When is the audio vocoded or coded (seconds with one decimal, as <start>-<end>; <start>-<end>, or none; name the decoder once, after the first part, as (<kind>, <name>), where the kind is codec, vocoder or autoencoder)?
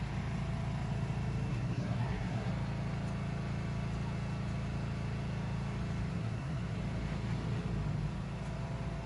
1.5-2.5 (codec, SNAC); 6.1-6.8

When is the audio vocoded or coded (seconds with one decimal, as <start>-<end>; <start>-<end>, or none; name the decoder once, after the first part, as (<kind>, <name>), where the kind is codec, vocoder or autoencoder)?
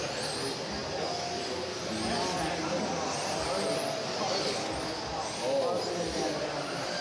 none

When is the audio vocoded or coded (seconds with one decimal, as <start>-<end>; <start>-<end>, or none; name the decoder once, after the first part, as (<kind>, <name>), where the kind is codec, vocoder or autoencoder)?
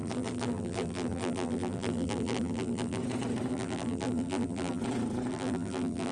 0.0-3.0 (vocoder, BigVGAN v2); 3.5-4.8; 5.3-6.1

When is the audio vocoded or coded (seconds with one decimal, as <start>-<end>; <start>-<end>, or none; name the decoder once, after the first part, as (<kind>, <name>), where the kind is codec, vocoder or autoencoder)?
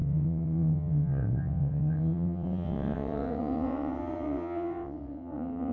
0.0-5.7 (vocoder, WaveNeXt)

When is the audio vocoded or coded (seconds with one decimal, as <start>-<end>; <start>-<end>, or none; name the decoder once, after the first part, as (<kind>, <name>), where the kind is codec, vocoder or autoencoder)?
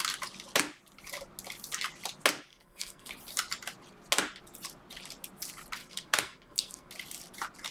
2.5-3.1 (codec, SNAC); 5.8-6.9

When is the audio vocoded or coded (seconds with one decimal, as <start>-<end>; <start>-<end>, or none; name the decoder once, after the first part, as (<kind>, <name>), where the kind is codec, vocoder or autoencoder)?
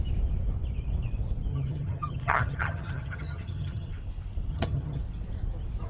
1.5-3.9 (vocoder, HiFi-GAN); 4.5-5.0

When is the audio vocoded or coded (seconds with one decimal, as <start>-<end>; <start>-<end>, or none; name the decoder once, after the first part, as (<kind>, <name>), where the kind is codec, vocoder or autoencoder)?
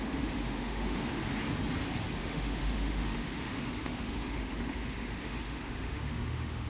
0.0-1.2 (autoencoder, DAC-VAE); 2.2-6.7